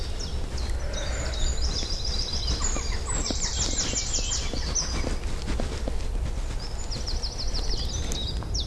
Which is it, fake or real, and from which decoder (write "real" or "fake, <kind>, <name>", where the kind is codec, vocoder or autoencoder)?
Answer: real